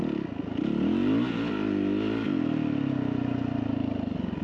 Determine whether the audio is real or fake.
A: real